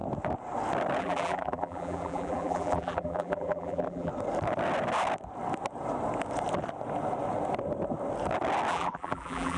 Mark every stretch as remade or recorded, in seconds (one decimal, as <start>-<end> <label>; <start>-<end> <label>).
0.0-1.0 recorded; 1.0-4.1 remade; 4.1-8.7 recorded; 8.7-9.6 remade